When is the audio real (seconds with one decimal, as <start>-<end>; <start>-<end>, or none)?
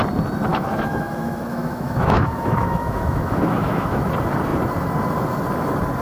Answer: 0.0-0.5; 4.1-6.0